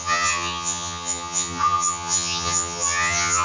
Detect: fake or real fake